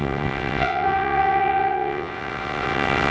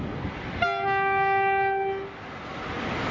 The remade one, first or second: first